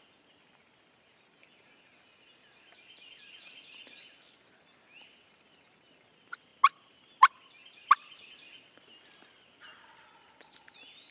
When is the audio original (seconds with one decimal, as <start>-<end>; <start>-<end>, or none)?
0.0-11.1